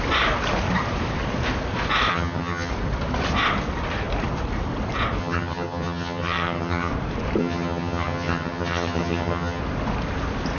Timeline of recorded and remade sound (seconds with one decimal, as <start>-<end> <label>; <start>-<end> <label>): 0.0-2.1 recorded; 2.1-2.7 remade; 2.7-5.2 recorded; 5.2-6.9 remade; 6.9-7.4 recorded; 7.4-9.6 remade; 9.6-10.6 recorded